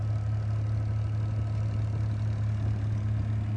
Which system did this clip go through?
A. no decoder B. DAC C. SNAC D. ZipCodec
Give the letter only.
A